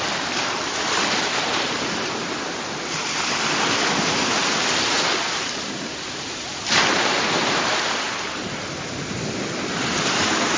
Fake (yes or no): no